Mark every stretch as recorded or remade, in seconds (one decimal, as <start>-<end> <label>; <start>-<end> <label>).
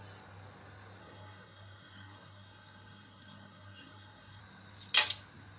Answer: 0.0-1.0 recorded; 1.0-4.4 remade; 4.4-5.6 recorded